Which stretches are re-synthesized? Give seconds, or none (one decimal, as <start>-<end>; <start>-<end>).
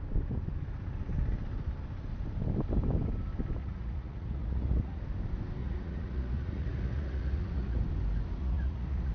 3.6-5.0; 5.6-7.8; 8.4-9.1